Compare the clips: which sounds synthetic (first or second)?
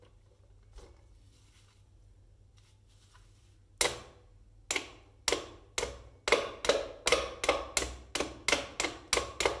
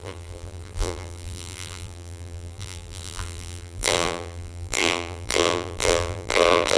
second